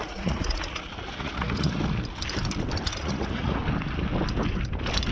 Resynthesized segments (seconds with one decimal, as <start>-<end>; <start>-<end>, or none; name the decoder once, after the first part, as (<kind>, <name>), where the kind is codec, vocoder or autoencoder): 0.0-1.8 (vocoder, Vocos); 3.0-3.6